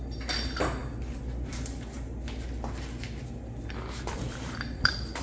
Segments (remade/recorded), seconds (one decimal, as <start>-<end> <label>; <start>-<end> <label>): 0.0-5.2 recorded